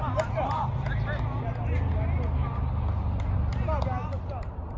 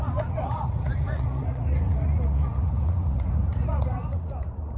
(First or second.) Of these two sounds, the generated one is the second